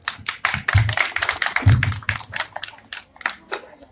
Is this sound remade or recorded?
recorded